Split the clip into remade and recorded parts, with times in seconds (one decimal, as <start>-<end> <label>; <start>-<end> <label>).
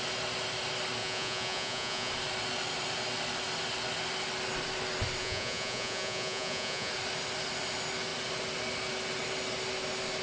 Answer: 0.0-1.0 recorded; 1.0-2.1 remade; 2.1-5.2 recorded; 5.2-6.9 remade; 6.9-10.2 recorded